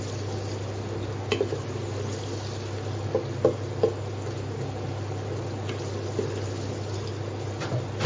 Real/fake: real